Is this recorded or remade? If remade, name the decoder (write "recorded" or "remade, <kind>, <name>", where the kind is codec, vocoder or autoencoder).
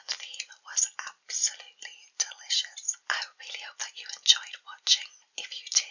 recorded